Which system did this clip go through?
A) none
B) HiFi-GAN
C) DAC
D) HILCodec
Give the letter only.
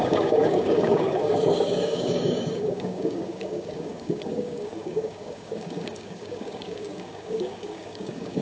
C